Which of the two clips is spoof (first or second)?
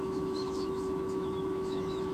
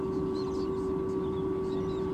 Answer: first